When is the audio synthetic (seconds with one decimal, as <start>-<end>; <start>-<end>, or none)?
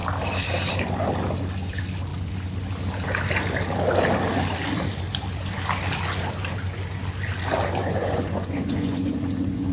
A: 7.8-9.7